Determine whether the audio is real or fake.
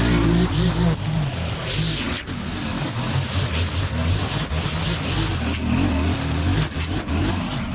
real